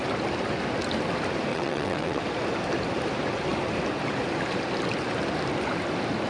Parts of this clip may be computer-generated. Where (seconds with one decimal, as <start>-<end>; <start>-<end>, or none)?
1.5-2.2